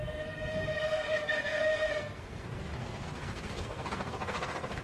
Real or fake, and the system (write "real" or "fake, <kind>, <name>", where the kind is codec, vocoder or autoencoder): fake, codec, SNAC